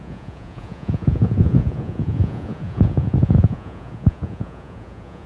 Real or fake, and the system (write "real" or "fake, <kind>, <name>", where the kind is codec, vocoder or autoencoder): fake, vocoder, Vocos